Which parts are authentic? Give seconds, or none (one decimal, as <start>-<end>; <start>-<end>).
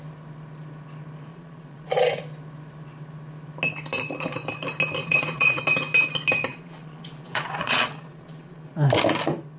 0.0-1.3; 2.2-5.0; 5.6-6.5; 8.7-9.6